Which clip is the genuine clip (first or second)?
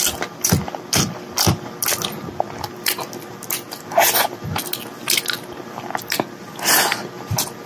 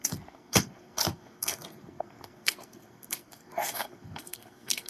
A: first